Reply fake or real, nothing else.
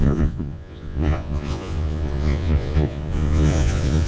fake